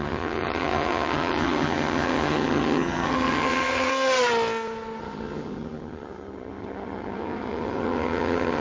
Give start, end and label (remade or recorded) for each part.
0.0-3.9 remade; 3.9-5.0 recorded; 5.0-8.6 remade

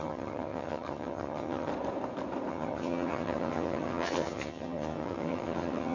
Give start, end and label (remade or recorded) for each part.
0.0-1.7 remade; 1.7-2.5 recorded; 2.5-5.9 remade

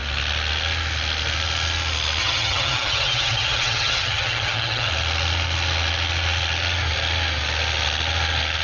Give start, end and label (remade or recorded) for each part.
0.0-2.2 recorded; 2.2-4.9 remade; 4.9-8.6 recorded

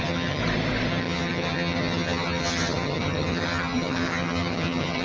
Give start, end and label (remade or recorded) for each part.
0.0-0.4 remade; 0.4-0.9 recorded; 0.9-5.0 remade

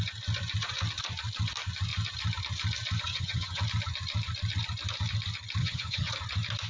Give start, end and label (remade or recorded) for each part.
0.0-3.1 recorded; 3.1-3.6 remade; 3.6-5.6 recorded; 5.6-6.1 remade; 6.1-6.7 recorded

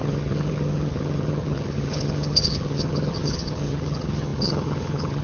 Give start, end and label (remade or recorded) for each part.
0.0-5.2 remade